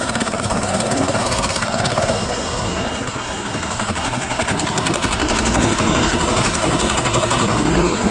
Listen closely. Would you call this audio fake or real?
fake